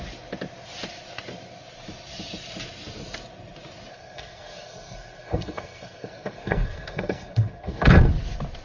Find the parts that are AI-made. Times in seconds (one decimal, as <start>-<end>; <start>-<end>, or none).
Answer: 3.9-8.1